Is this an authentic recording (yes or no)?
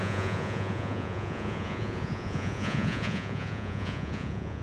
no